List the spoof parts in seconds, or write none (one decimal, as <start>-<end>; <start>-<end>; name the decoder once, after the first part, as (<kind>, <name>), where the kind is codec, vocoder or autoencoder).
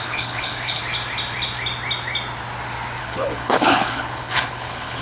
0.0-0.8 (codec, HILCodec); 3.0-5.0